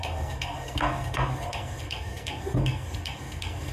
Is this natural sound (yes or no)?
no